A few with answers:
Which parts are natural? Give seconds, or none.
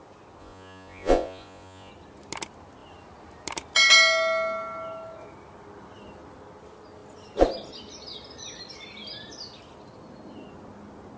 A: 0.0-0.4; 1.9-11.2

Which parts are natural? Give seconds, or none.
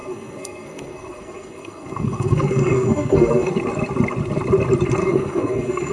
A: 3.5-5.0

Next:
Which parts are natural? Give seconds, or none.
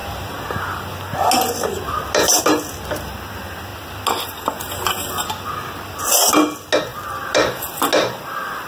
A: 0.0-8.7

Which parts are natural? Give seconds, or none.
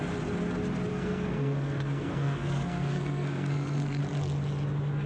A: 0.0-0.9; 4.0-5.1